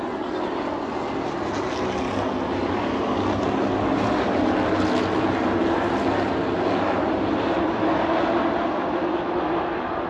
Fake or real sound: real